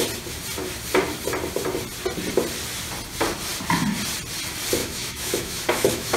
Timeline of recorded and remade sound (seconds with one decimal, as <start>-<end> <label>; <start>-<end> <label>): 0.0-4.8 recorded; 4.8-6.2 remade